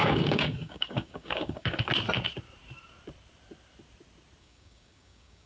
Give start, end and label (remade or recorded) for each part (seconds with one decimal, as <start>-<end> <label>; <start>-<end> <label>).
0.0-1.9 remade; 1.9-4.4 recorded; 4.4-5.5 remade